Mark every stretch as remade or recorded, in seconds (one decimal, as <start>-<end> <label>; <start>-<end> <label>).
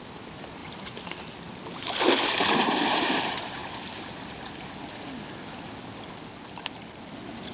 0.0-0.6 remade; 0.6-2.6 recorded; 2.6-3.6 remade; 3.6-7.5 recorded